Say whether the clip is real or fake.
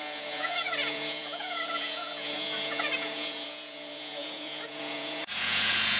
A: fake